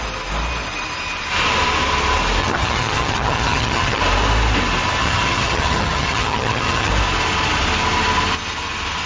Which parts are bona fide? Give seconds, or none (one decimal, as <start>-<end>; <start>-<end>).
0.0-2.4; 4.0-5.0; 6.9-9.1